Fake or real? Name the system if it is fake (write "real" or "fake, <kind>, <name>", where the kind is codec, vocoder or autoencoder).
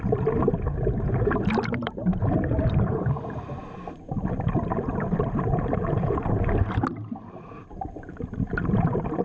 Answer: fake, vocoder, BigVGAN v2